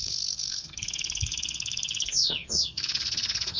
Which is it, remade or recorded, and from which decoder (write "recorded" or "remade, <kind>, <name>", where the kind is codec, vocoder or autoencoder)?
remade, codec, SNAC